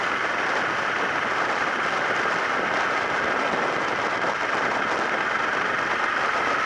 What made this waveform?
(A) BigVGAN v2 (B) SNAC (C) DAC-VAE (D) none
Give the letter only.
D